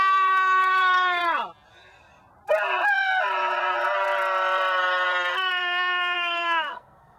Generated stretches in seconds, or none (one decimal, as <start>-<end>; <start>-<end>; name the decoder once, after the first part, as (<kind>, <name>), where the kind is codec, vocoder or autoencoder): 0.0-1.2 (codec, SNAC); 5.5-7.2